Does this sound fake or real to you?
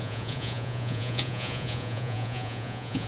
fake